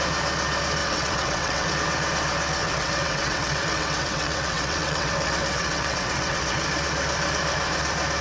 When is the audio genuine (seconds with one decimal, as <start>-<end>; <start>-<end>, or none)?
0.0-0.8; 1.7-2.6; 6.6-8.2